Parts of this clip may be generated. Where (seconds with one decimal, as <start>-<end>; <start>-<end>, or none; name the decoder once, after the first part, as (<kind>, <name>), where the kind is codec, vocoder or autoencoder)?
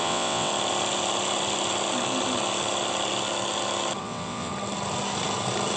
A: 0.0-0.5 (vocoder, WaveNeXt); 4.0-4.5